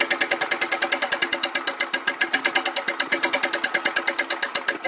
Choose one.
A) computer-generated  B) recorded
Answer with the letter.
B